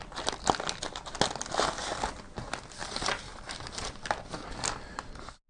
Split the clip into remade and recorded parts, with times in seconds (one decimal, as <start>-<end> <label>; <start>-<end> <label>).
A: 0.0-2.8 recorded; 2.8-4.1 remade; 4.1-5.5 recorded